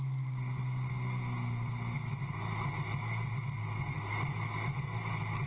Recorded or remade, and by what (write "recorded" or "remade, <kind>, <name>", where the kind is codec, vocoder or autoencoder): recorded